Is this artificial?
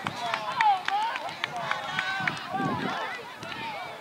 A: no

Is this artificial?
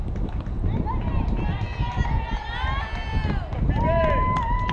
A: no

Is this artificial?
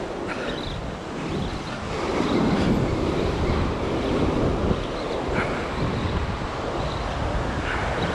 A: no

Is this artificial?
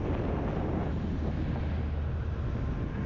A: no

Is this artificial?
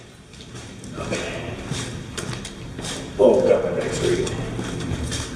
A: no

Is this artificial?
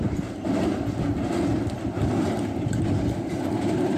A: no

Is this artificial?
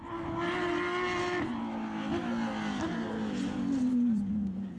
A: no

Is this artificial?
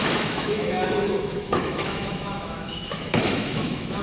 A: yes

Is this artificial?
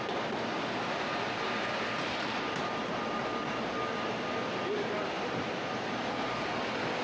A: no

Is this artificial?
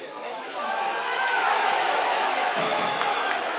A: yes